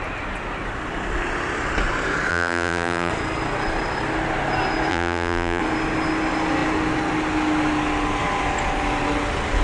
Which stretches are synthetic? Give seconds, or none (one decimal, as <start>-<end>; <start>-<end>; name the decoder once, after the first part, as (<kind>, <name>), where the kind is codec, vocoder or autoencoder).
2.3-3.1 (vocoder, BigVGAN v2); 4.9-5.6